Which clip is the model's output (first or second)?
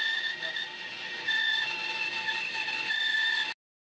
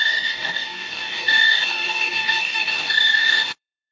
second